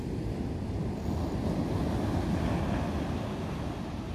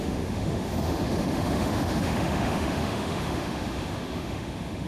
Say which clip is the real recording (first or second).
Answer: first